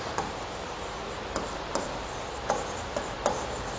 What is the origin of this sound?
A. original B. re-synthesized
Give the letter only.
A